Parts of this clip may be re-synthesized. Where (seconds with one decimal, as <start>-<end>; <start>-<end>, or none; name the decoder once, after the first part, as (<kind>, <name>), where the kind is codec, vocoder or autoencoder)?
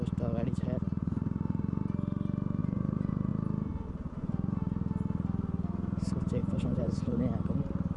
1.0-1.8 (vocoder, Vocos); 2.6-3.3; 3.7-4.3; 6.4-7.2